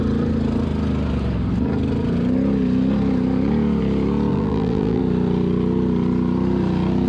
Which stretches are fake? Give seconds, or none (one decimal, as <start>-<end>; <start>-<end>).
4.3-5.0